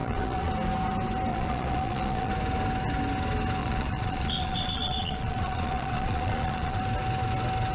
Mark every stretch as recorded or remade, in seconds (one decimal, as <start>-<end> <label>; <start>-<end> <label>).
0.0-0.5 remade; 0.5-1.3 recorded; 1.3-2.3 remade; 2.3-3.6 recorded; 3.6-6.8 remade; 6.8-7.7 recorded

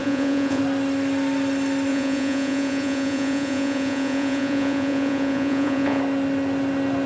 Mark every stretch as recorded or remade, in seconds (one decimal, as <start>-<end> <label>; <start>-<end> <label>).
0.0-0.6 remade; 0.6-1.9 recorded; 1.9-6.0 remade; 6.0-7.1 recorded

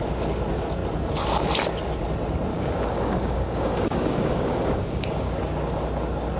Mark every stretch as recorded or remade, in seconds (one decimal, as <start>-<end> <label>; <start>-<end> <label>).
0.0-2.5 recorded; 2.5-5.3 remade; 5.3-6.4 recorded